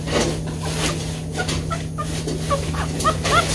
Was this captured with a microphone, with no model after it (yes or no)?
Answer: yes